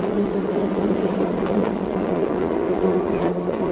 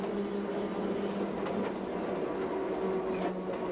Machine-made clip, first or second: first